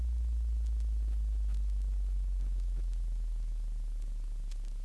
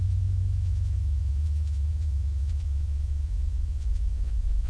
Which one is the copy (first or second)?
second